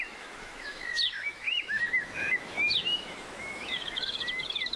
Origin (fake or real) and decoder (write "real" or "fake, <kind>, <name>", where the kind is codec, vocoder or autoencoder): fake, autoencoder, DAC-VAE